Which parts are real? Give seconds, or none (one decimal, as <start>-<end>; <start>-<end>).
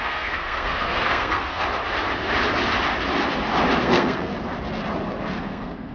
1.6-3.8; 4.3-5.4